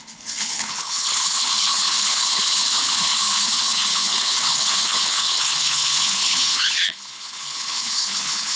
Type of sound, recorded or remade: remade